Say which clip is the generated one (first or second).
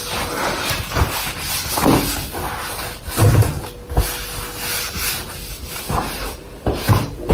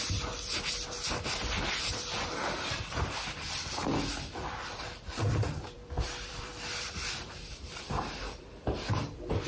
second